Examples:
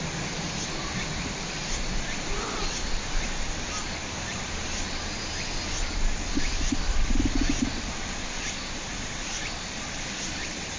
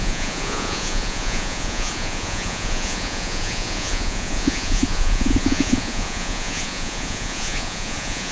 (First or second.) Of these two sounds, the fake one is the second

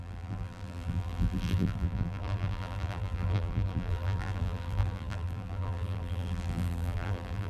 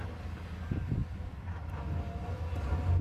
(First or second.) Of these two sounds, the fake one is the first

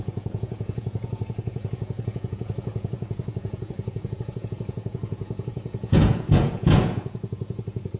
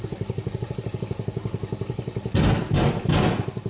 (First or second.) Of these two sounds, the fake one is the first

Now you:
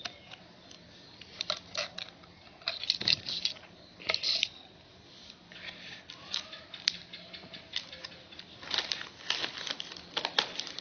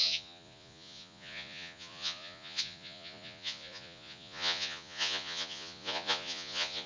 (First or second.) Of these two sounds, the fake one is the second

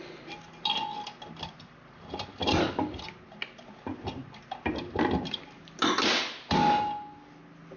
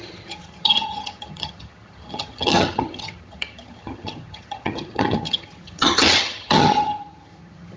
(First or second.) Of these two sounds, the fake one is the second